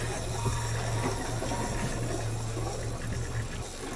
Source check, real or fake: real